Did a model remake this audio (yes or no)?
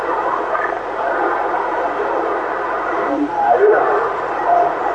no